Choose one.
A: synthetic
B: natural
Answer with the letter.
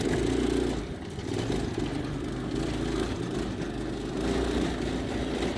B